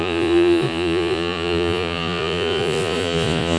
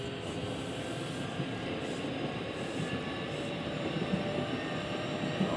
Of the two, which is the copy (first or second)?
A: first